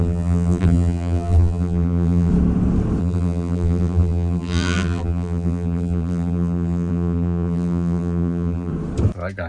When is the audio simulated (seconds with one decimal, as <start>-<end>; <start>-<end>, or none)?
0.0-2.3; 3.0-8.7